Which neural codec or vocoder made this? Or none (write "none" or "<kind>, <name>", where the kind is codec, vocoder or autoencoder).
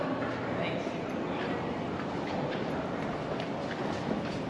none